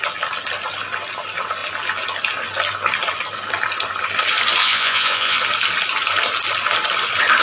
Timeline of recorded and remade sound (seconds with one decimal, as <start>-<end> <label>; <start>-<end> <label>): 0.0-4.6 recorded; 4.6-5.4 remade; 5.4-7.4 recorded